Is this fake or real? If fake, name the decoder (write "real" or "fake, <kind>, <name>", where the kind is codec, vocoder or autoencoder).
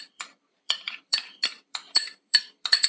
fake, vocoder, BigVGAN v2